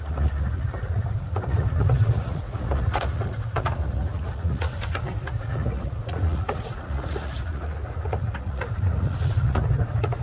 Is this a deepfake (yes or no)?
yes